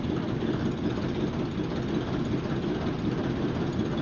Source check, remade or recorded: remade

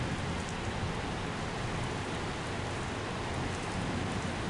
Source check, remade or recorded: recorded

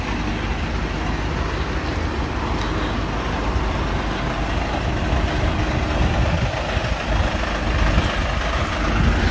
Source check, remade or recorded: recorded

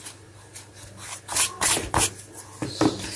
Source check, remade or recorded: recorded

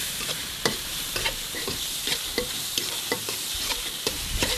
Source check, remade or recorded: remade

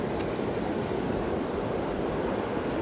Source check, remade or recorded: recorded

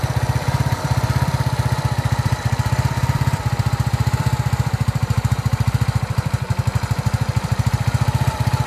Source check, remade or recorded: remade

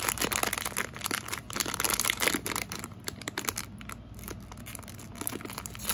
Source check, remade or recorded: recorded